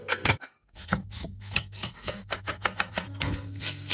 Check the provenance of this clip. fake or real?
fake